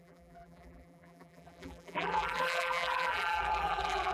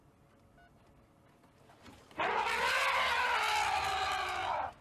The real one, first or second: second